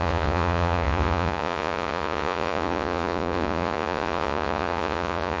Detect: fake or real fake